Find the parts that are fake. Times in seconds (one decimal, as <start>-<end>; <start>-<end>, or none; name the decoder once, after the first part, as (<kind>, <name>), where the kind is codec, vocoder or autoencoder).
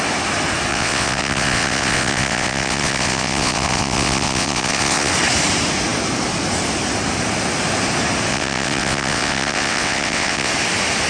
0.7-5.1 (vocoder, WaveNeXt); 8.3-10.5